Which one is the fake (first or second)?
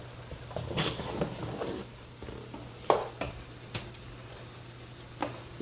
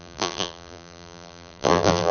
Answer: second